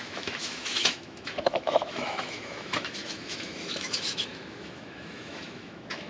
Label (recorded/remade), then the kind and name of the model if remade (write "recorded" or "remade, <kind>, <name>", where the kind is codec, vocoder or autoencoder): remade, autoencoder, DAC-VAE